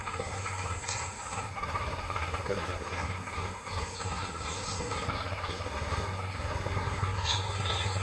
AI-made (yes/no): yes